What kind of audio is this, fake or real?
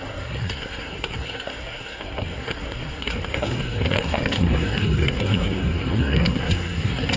fake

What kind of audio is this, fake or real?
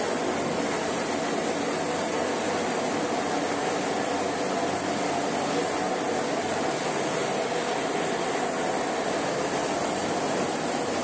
real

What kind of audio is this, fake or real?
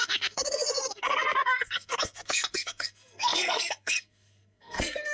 fake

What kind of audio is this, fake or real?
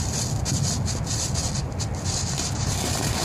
real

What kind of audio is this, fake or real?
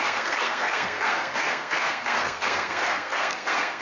fake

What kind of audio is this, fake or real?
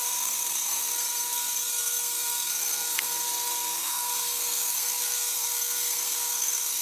fake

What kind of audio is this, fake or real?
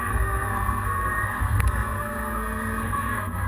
fake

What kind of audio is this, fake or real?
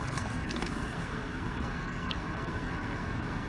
fake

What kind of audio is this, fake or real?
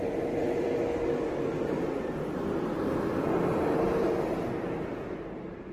real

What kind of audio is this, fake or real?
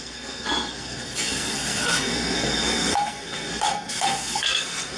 fake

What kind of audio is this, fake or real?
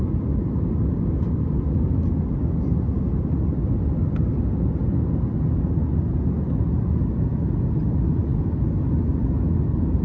real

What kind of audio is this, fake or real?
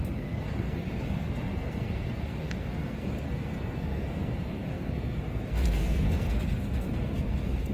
fake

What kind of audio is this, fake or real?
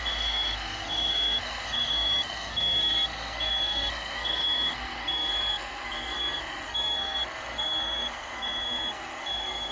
fake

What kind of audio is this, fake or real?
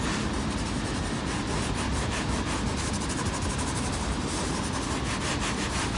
real